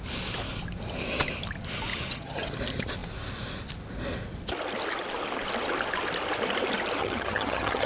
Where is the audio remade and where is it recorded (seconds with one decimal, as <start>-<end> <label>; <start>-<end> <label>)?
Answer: 0.0-1.9 recorded; 1.9-2.6 remade; 2.6-7.0 recorded; 7.0-7.9 remade